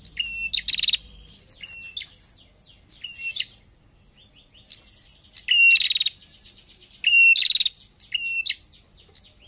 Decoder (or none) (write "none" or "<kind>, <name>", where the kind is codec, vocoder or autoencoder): none